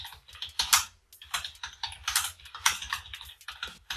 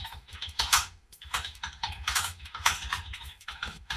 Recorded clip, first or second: first